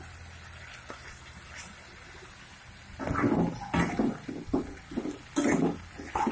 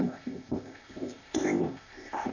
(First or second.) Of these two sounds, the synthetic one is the second